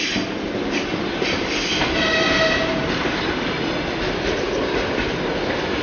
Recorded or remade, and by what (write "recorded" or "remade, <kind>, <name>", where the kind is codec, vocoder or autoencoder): recorded